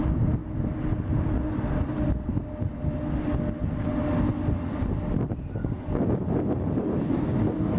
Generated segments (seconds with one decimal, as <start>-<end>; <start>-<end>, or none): none